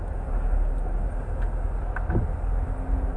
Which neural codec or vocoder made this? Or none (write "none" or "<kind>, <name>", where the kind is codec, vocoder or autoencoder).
none